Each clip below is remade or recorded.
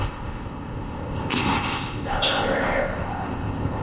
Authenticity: remade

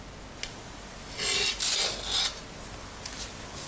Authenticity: recorded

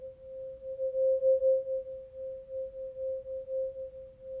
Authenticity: recorded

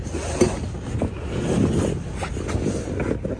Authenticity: recorded